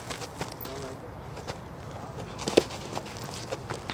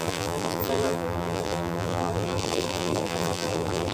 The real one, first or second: first